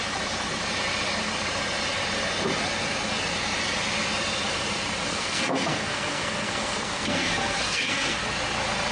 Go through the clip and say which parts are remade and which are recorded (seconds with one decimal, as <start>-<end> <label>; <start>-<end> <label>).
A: 0.0-5.1 recorded; 5.1-8.2 remade; 8.2-8.9 recorded